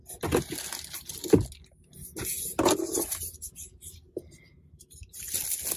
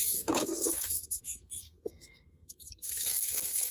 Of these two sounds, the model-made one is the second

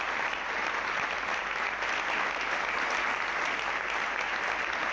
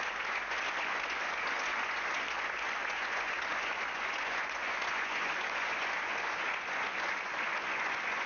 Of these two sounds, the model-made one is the second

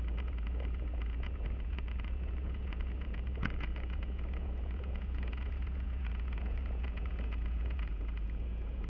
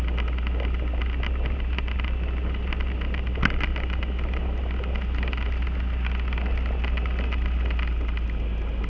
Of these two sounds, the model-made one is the first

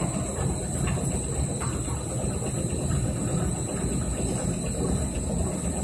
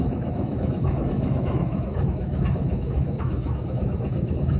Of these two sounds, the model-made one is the second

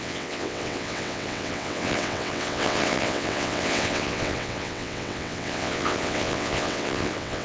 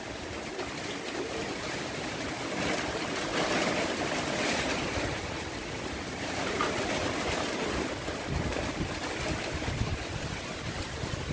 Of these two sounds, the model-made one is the first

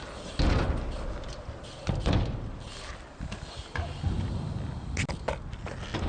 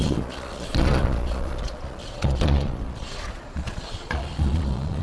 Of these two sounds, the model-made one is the second